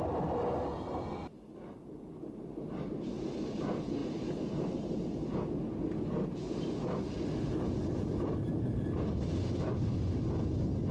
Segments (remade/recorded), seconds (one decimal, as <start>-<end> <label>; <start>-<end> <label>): 0.0-10.9 recorded